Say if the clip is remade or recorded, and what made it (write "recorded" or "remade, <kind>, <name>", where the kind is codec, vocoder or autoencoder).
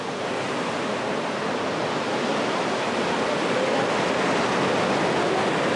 recorded